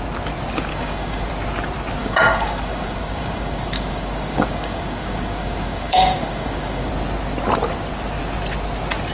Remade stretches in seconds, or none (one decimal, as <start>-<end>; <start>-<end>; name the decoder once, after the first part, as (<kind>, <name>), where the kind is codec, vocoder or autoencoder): 0.7-1.3 (codec, DAC); 2.0-6.9